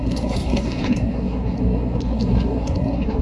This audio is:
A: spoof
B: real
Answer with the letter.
A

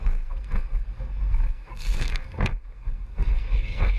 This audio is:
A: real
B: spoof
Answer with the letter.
B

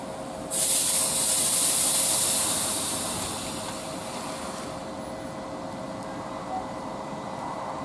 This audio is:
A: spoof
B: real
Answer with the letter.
B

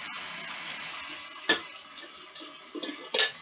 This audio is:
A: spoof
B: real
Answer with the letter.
B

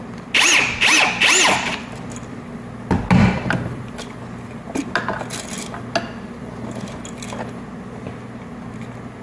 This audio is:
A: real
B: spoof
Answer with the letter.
A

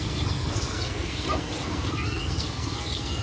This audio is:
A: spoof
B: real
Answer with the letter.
A